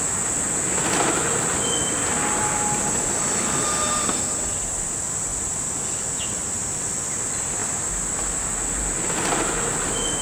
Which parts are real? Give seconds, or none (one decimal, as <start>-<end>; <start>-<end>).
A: 0.0-10.2